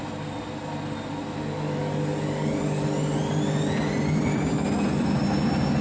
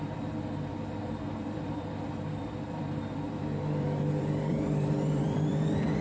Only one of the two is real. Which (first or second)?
first